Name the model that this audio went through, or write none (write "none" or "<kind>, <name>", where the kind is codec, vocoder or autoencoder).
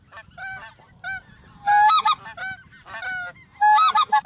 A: none